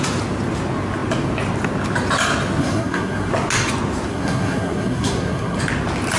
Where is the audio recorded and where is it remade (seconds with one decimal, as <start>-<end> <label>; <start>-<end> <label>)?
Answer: 0.0-2.6 recorded; 2.6-3.3 remade; 3.3-4.1 recorded; 4.1-5.6 remade; 5.6-6.2 recorded